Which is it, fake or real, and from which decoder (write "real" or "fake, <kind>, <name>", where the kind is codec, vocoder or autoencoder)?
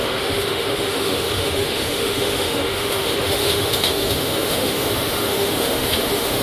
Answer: fake, autoencoder, DAC-VAE